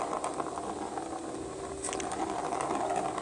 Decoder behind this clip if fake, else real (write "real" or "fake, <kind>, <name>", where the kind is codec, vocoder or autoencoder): real